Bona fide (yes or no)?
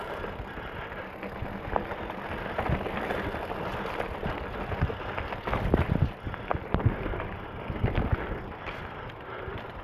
yes